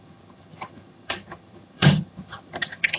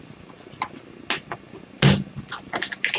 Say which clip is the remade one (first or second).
first